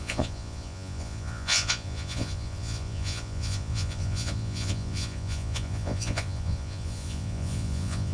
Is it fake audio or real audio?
fake